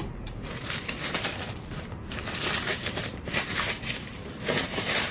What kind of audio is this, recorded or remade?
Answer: remade